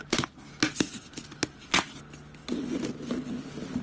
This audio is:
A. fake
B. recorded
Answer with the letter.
B